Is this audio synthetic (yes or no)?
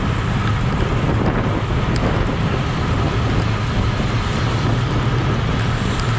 no